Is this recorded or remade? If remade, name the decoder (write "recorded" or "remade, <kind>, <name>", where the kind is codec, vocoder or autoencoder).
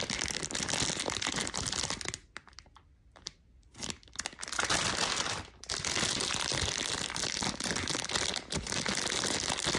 recorded